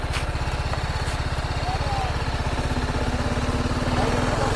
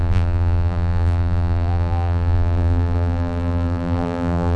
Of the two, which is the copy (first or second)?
second